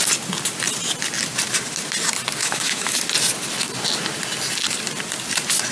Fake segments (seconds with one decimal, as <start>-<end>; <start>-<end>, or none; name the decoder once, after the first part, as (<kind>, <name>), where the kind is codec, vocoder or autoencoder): 2.4-3.0 (autoencoder, DAC-VAE)

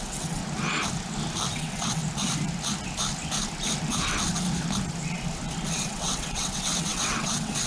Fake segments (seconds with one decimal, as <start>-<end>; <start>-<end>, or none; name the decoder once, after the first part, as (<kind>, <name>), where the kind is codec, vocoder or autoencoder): 0.0-0.4 (vocoder, WaveNeXt); 1.5-2.0; 5.7-7.7

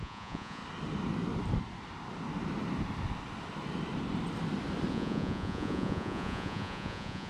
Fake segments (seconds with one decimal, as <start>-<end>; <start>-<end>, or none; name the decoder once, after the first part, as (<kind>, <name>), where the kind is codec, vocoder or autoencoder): 0.0-0.6 (vocoder, Vocos); 4.9-7.3

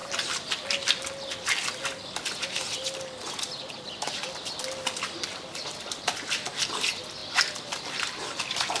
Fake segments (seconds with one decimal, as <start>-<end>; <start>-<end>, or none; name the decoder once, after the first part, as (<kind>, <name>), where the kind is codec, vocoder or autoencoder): none

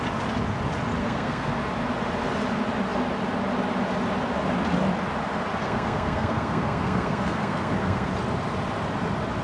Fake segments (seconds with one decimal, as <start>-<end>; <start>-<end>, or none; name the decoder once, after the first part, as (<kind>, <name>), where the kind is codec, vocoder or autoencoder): 1.0-1.5 (codec, SNAC); 5.6-8.1